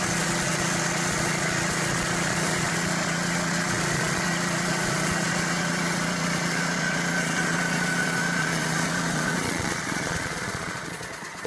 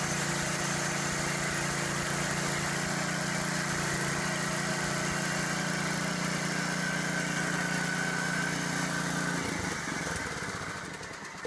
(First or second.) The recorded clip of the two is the second